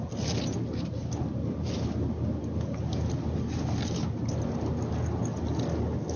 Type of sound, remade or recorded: recorded